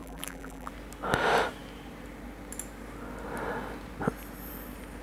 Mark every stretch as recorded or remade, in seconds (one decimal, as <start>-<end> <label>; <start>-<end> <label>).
0.0-0.7 remade; 0.7-5.0 recorded